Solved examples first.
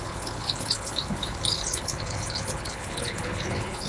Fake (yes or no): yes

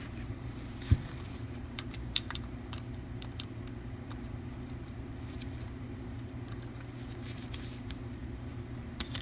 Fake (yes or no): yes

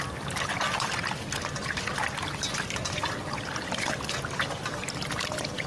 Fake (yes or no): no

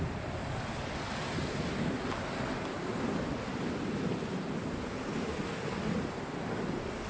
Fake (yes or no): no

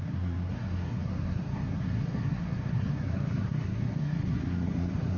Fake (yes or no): yes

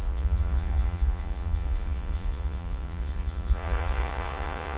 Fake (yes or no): yes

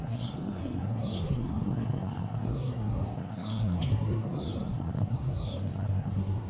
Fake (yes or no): yes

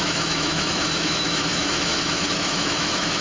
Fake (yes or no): yes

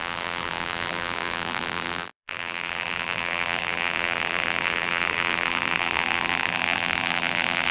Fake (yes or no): yes